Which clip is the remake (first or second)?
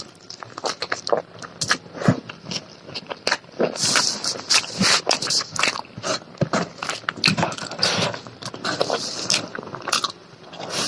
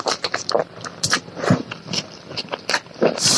second